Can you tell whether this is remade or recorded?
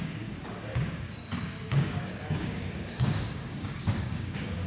remade